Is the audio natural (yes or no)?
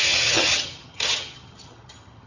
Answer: no